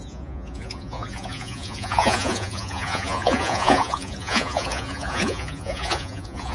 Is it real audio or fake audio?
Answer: fake